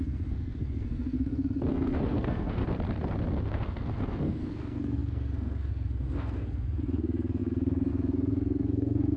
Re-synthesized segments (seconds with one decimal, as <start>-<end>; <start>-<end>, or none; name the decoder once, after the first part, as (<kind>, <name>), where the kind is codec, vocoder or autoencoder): 0.0-2.6 (codec, SNAC); 3.4-9.2